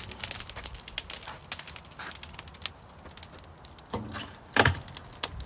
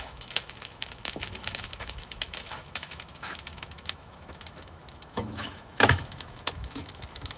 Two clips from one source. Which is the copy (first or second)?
second